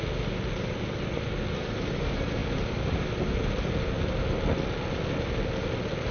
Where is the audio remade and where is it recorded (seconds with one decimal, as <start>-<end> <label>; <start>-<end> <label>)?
0.0-6.1 recorded